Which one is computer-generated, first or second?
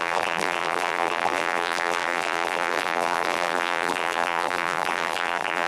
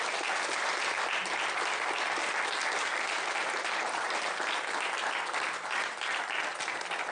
first